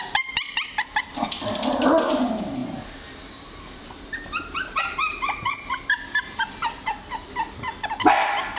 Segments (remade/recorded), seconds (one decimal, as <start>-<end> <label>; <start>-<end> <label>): 0.0-2.6 recorded; 2.6-5.8 remade; 5.8-8.6 recorded